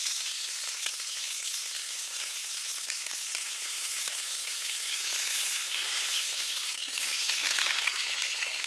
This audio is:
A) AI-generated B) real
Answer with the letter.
A